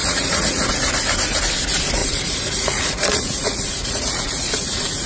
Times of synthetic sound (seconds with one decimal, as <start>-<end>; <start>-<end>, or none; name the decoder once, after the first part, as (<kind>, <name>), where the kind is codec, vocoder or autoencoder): 0.0-0.7 (vocoder, Vocos); 2.0-5.1